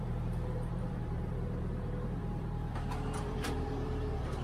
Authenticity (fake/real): fake